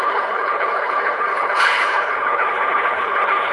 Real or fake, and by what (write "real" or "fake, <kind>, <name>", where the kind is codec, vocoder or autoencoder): fake, codec, HILCodec